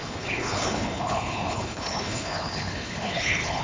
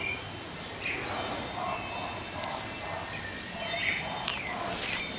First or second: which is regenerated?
first